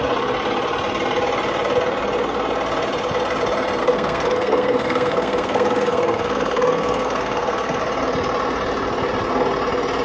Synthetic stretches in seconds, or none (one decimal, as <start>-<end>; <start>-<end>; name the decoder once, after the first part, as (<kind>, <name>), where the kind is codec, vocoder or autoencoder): 3.8-7.8 (codec, SNAC)